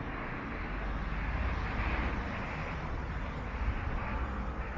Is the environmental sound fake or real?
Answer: real